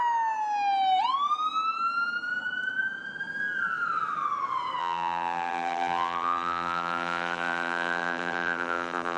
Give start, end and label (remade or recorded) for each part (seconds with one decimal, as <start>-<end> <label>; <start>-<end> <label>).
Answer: 0.0-4.8 recorded; 4.8-9.2 remade